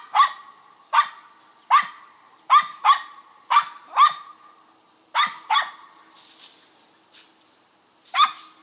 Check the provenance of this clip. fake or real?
real